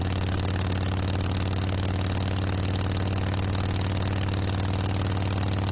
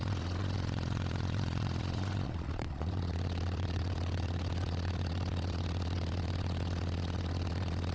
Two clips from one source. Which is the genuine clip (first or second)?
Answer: first